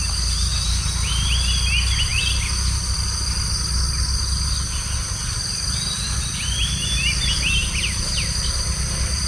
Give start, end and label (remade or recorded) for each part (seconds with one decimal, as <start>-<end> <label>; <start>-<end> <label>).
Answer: 0.0-9.3 recorded